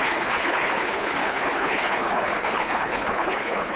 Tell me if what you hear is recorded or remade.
remade